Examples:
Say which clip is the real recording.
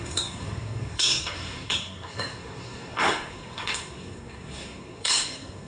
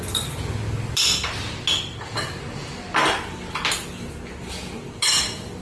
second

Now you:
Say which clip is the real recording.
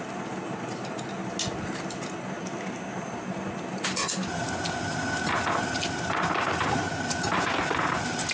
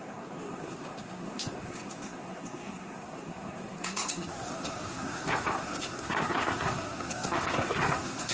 first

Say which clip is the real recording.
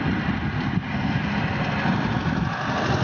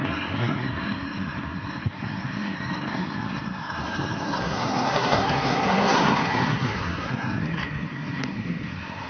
first